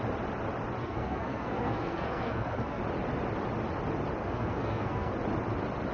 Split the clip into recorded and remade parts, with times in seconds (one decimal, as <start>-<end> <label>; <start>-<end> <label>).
0.0-0.8 recorded; 0.8-2.8 remade; 2.8-4.2 recorded; 4.2-5.1 remade; 5.1-5.9 recorded